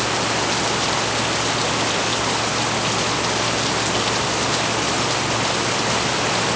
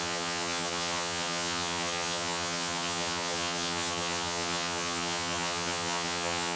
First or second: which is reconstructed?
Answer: second